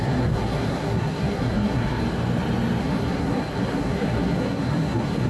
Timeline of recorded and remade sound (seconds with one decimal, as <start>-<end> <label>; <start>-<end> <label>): 0.0-2.0 remade; 2.0-2.8 recorded; 2.8-5.3 remade